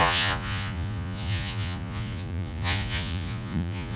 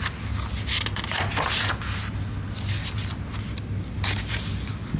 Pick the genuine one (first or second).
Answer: second